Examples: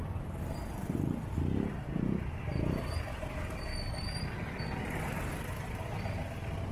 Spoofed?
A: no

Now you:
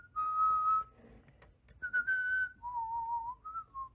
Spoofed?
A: no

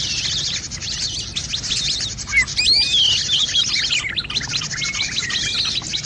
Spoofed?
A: no